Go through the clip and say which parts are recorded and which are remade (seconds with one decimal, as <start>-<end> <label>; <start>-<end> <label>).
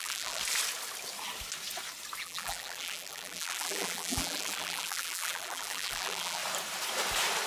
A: 0.0-0.4 remade; 0.4-2.2 recorded; 2.2-6.4 remade; 6.4-7.5 recorded